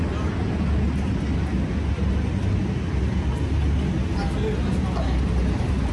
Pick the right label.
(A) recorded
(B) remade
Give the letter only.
A